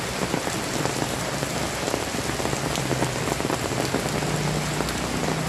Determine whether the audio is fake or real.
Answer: real